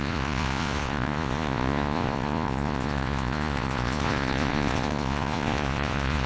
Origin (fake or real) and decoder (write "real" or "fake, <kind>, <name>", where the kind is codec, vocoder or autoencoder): fake, vocoder, Vocos